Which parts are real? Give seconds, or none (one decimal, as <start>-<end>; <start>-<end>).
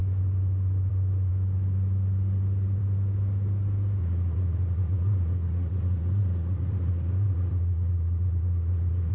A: 0.0-4.0